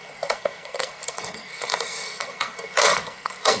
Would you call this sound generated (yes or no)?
yes